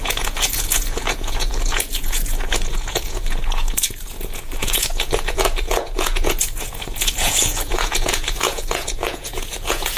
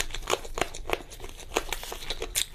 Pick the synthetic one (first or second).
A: first